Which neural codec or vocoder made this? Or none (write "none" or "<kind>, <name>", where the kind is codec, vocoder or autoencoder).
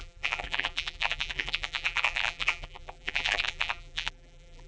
vocoder, BigVGAN v2